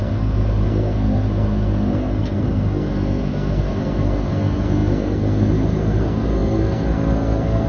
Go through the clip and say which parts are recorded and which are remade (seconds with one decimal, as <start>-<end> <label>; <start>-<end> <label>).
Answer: 0.0-7.7 remade